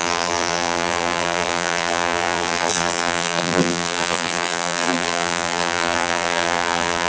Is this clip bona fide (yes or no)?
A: no